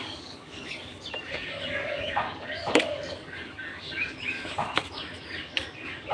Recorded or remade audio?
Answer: remade